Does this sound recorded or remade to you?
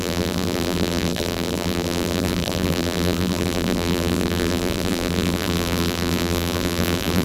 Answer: remade